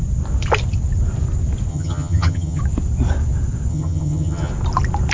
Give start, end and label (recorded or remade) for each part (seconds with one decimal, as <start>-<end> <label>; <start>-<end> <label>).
0.0-1.7 recorded; 1.7-2.6 remade; 2.6-3.7 recorded; 3.7-4.5 remade; 4.5-5.1 recorded